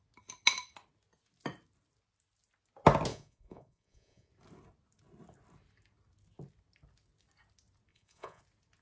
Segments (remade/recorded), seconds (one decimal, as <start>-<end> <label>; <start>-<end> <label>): 0.0-3.1 recorded; 3.1-4.3 remade; 4.3-7.9 recorded; 7.9-8.4 remade; 8.4-8.8 recorded

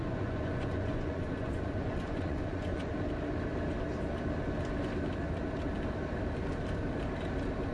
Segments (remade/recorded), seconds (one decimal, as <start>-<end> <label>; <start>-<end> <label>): 0.0-2.9 remade; 2.9-7.7 recorded